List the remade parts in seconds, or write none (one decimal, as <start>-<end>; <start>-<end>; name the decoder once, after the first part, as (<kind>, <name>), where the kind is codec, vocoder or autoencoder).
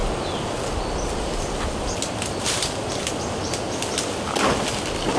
none